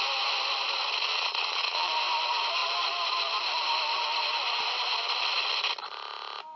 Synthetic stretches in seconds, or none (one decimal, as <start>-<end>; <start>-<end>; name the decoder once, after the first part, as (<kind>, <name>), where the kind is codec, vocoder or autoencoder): 1.1-1.9 (vocoder, Vocos)